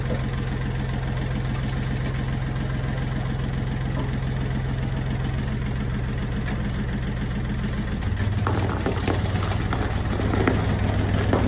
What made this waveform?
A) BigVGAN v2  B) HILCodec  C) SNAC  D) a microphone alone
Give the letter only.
D